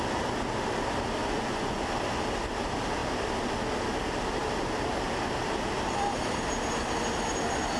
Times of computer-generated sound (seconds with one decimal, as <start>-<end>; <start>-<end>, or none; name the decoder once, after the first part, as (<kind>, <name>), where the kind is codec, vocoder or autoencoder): 1.2-1.8 (vocoder, Vocos)